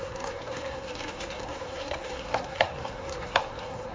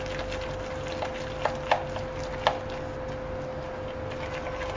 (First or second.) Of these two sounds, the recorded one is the second